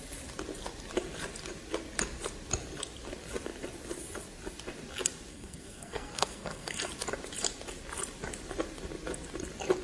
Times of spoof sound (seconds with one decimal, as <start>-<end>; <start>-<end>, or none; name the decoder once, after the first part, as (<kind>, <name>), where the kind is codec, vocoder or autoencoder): 5.3-6.9 (codec, SNAC)